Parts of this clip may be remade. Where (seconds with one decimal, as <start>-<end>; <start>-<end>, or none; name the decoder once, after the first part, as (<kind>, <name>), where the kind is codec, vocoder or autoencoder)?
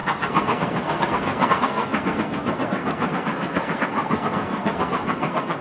0.0-5.6 (codec, SNAC)